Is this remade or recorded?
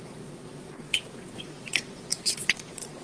remade